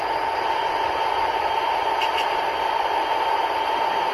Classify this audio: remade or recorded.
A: recorded